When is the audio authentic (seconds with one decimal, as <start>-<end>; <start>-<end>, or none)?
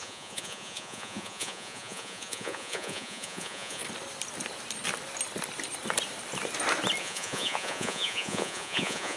3.8-7.0